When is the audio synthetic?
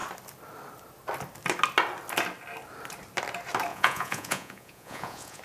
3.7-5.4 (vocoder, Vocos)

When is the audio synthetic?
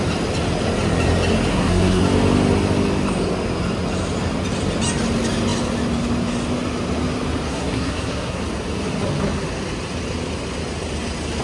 1.5-2.0 (codec, SNAC); 7.5-8.4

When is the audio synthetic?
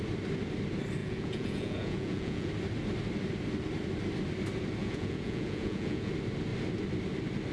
1.0-2.5 (vocoder, Vocos); 4.8-6.1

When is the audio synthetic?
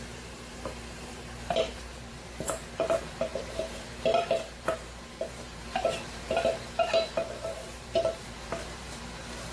0.0-9.5 (vocoder, BigVGAN v2)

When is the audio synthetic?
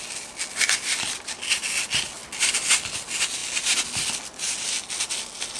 none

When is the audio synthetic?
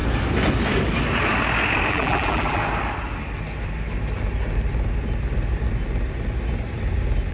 1.9-2.6 (vocoder, BigVGAN v2)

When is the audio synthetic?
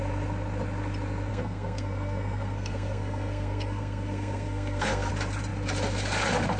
1.3-5.1 (codec, SNAC)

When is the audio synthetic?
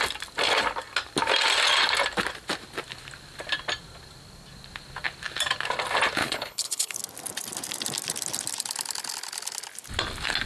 6.2-7.0 (codec, HILCodec)